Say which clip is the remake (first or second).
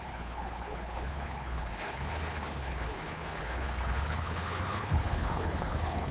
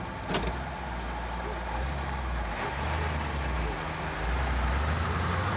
first